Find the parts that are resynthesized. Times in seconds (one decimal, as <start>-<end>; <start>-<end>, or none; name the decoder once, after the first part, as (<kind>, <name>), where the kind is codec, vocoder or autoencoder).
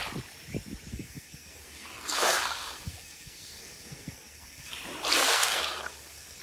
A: 0.9-4.7 (codec, SNAC); 5.2-6.4